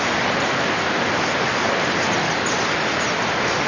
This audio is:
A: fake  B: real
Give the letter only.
B